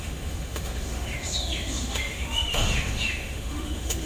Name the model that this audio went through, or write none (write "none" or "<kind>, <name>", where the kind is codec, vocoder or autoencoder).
autoencoder, DAC-VAE